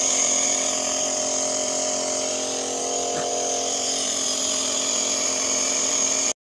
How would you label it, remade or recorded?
recorded